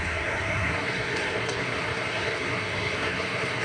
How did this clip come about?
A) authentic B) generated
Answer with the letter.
B